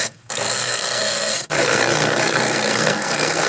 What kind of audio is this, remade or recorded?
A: remade